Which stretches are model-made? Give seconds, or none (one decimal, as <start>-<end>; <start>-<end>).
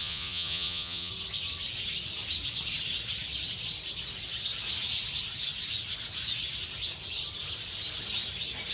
0.0-1.1